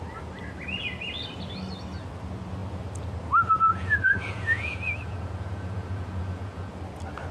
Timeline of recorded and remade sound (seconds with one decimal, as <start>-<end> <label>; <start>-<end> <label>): 0.0-3.7 recorded; 3.7-6.7 remade; 6.7-7.3 recorded